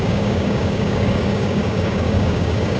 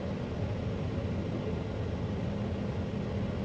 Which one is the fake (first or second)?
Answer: first